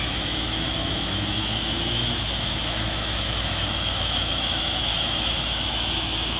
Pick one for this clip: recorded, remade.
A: remade